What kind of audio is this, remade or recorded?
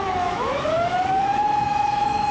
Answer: remade